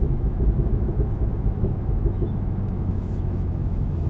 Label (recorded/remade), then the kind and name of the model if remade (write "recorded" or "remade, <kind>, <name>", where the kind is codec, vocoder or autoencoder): remade, autoencoder, DAC-VAE